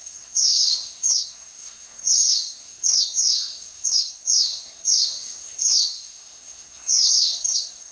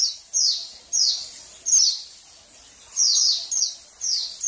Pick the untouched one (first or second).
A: second